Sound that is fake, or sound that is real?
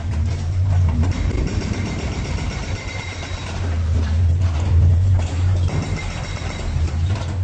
fake